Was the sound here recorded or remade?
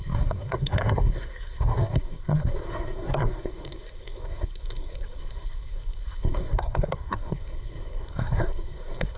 remade